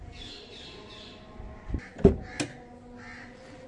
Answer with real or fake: real